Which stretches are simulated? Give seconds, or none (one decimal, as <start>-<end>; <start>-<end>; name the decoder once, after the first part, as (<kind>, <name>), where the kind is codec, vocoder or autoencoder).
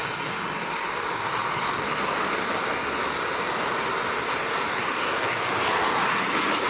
none